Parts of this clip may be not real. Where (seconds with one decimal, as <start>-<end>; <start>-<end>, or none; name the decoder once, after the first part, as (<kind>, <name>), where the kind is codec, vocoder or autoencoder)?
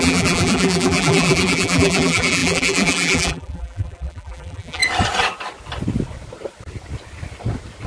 0.0-4.8 (vocoder, BigVGAN v2)